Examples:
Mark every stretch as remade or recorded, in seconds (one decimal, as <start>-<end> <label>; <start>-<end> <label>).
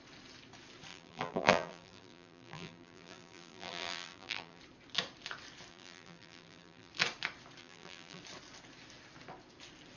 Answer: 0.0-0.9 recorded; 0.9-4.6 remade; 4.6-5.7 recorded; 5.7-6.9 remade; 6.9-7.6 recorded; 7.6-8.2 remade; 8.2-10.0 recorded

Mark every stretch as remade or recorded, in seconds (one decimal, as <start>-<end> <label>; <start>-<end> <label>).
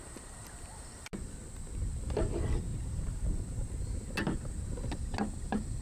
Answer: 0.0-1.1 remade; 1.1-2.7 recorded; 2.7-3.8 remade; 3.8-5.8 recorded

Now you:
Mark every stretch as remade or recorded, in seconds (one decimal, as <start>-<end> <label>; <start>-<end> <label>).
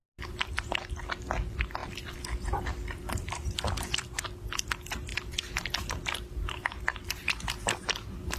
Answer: 0.0-0.9 remade; 0.9-1.8 recorded; 1.8-4.2 remade; 4.2-5.1 recorded; 5.1-5.9 remade; 5.9-8.4 recorded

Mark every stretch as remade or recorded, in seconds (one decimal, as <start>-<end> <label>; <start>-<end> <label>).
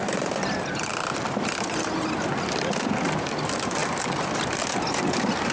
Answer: 0.0-3.8 recorded; 3.8-4.6 remade; 4.6-5.5 recorded